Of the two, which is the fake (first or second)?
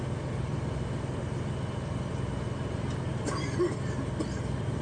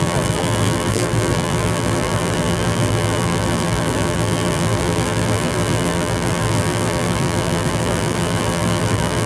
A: second